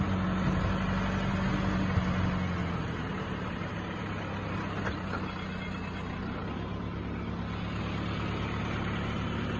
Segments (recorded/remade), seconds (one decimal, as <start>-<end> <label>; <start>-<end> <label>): 0.0-2.6 recorded; 2.6-4.0 remade; 4.0-9.6 recorded